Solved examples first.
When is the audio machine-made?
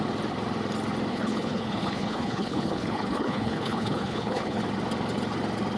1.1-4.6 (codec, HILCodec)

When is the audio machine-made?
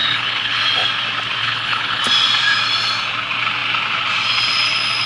0.0-0.6 (codec, HILCodec); 1.4-2.0